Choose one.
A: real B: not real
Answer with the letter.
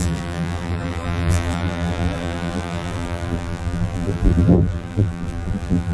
B